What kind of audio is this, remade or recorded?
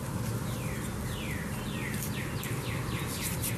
remade